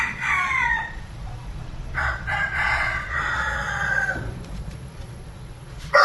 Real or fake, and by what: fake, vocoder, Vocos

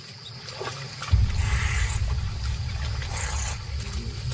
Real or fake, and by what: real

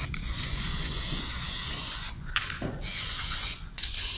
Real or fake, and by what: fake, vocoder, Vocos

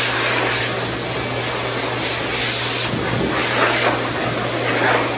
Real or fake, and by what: real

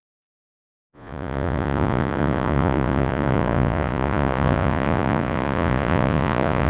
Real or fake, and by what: fake, vocoder, Vocos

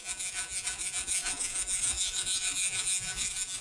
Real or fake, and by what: fake, vocoder, Vocos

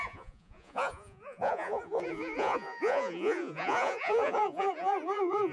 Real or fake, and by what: fake, vocoder, Vocos